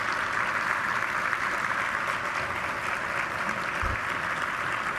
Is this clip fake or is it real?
real